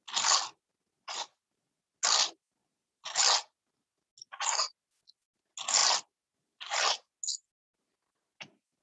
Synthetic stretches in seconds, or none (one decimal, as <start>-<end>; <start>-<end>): none